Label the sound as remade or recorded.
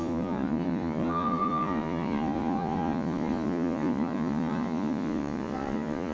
remade